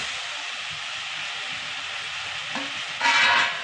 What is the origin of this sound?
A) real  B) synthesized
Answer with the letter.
A